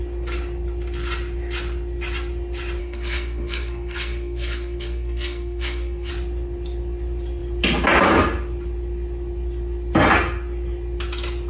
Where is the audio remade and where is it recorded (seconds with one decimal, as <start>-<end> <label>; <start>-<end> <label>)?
0.0-2.8 recorded; 2.8-6.1 remade; 6.1-11.5 recorded

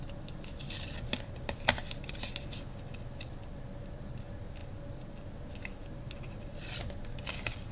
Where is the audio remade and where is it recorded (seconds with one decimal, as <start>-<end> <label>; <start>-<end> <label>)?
0.0-7.7 recorded